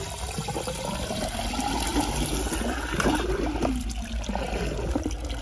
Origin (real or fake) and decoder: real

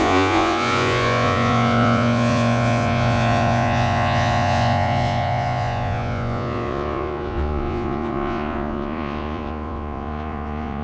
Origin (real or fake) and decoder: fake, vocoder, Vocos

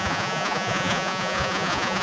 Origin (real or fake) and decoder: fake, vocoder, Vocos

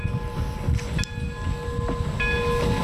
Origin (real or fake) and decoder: real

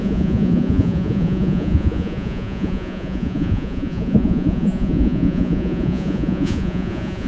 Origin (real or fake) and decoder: fake, vocoder, Vocos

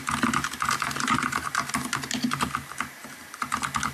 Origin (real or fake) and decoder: real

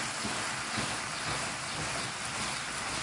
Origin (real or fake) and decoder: real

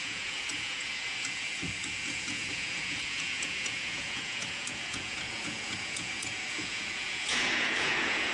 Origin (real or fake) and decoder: fake, vocoder, Vocos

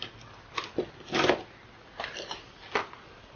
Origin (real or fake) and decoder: real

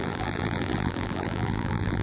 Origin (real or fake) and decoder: fake, vocoder, BigVGAN v2